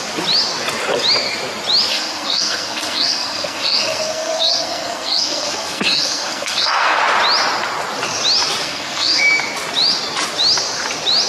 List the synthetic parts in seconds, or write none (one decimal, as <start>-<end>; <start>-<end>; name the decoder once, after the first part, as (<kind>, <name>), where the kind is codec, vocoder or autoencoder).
1.9-7.0 (codec, SNAC); 8.6-9.2